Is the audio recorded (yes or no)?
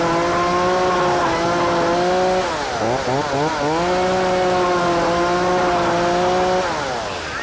yes